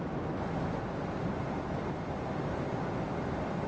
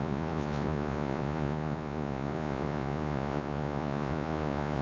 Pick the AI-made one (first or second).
second